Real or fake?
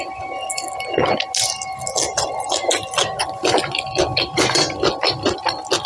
real